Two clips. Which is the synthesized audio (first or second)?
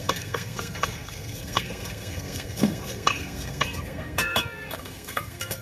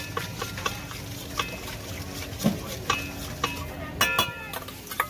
first